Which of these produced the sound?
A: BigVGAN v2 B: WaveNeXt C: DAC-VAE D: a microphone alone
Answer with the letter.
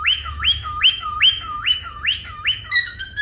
C